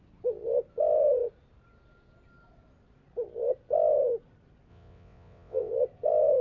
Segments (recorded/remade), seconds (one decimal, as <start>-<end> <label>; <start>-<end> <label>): 0.0-4.7 recorded; 4.7-5.7 remade; 5.7-6.4 recorded

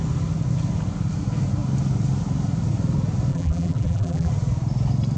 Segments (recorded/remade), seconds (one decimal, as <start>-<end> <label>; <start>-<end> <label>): 0.0-3.3 recorded; 3.3-4.3 remade; 4.3-5.2 recorded

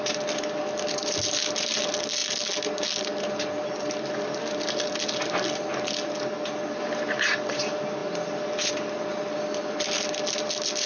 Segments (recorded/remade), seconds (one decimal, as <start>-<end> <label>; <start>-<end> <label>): 0.0-10.9 recorded

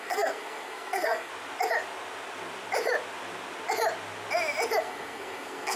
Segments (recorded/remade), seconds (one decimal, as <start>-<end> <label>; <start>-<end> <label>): 0.0-1.3 remade; 1.3-4.8 recorded; 4.8-5.8 remade

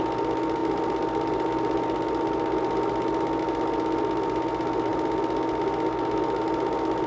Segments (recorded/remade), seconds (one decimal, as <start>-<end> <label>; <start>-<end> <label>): 0.0-7.1 recorded

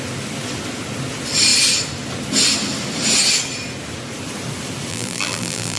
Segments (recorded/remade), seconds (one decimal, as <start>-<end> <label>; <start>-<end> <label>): 0.0-4.9 recorded; 4.9-5.8 remade

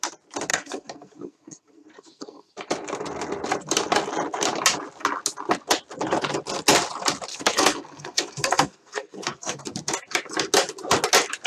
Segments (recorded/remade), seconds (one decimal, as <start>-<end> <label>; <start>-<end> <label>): 0.0-0.5 recorded; 0.5-2.5 remade; 2.5-7.3 recorded; 7.3-9.6 remade; 9.6-11.5 recorded

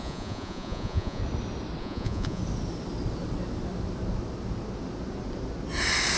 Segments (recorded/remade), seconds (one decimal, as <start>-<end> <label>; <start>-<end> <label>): 0.0-1.2 remade; 1.2-1.8 recorded; 1.8-2.4 remade; 2.4-6.2 recorded